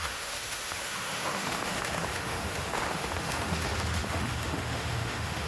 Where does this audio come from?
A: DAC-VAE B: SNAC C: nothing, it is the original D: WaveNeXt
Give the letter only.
A